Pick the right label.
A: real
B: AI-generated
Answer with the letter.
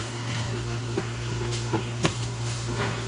B